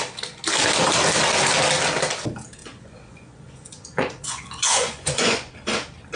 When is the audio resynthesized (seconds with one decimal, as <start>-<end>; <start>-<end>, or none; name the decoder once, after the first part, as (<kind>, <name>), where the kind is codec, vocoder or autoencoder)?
2.6-5.5 (vocoder, Vocos)